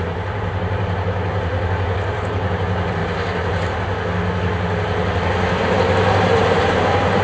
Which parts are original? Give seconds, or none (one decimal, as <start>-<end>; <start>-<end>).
1.5-2.1; 3.0-5.6